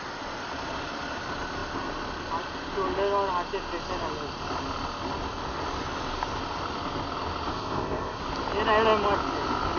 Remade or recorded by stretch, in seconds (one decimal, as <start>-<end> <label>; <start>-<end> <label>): 0.0-7.5 recorded; 7.5-8.2 remade; 8.2-9.8 recorded